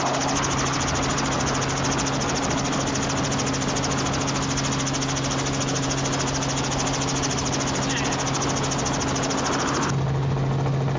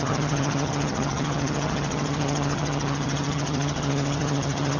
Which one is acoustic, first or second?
first